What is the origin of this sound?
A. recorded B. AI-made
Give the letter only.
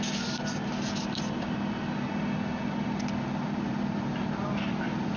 A